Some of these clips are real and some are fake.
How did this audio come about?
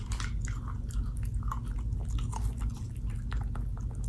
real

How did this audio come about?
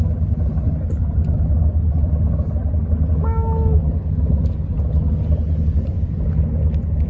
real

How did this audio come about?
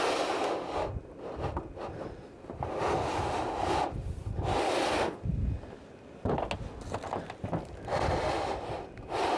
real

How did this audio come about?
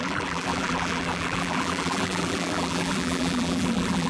fake